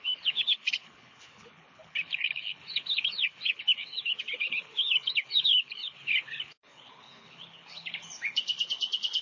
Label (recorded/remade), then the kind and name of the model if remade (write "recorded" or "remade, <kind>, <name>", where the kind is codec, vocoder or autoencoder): remade, codec, HILCodec